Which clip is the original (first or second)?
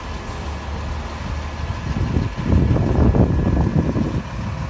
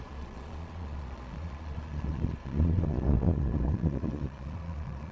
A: first